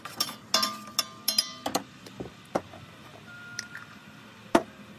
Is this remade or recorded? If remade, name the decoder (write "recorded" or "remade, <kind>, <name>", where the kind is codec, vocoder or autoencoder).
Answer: recorded